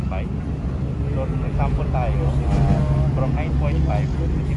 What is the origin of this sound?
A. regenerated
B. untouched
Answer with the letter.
B